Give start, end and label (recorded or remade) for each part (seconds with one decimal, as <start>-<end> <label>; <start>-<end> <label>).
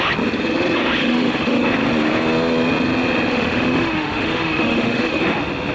0.0-1.0 recorded; 1.0-1.6 remade; 1.6-3.3 recorded; 3.3-5.2 remade; 5.2-5.7 recorded